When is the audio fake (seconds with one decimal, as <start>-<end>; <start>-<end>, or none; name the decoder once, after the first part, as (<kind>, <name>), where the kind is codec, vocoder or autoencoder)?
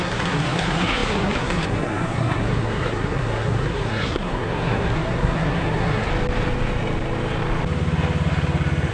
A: 0.0-6.1 (codec, SNAC)